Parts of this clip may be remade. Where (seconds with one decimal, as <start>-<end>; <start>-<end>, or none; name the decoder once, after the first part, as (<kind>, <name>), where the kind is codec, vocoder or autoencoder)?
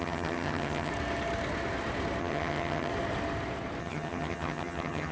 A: 0.0-0.9 (vocoder, HiFi-GAN); 2.2-2.9; 3.8-5.1